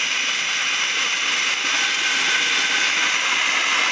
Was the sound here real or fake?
real